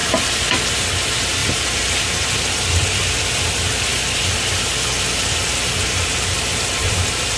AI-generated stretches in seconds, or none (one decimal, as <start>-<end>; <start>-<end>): 0.0-0.8; 1.4-3.3; 3.9-4.6